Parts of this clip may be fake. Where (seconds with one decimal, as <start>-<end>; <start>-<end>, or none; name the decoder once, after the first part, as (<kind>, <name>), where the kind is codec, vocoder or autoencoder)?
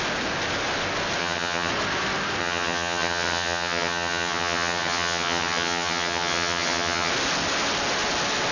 1.2-1.7 (vocoder, HiFi-GAN); 2.4-7.1